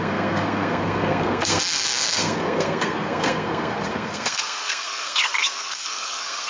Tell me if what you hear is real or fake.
fake